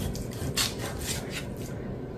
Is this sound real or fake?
real